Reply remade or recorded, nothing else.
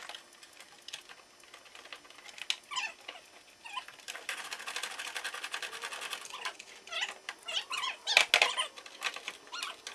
recorded